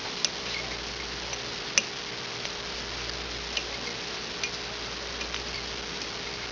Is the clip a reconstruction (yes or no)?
no